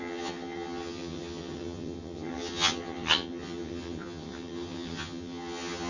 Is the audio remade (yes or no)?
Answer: yes